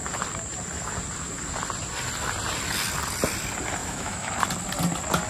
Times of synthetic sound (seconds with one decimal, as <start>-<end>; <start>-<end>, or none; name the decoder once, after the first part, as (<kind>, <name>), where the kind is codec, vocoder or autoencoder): 3.8-4.3 (autoencoder, DAC-VAE)